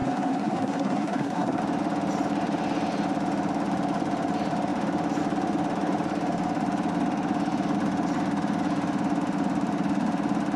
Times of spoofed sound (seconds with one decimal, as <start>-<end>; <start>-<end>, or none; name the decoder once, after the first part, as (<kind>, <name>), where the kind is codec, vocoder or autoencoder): 0.0-1.6 (codec, SNAC)